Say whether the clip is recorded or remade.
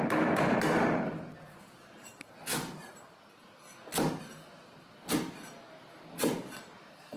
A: recorded